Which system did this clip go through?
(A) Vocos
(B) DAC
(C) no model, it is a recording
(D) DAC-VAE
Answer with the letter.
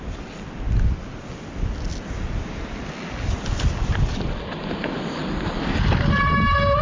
C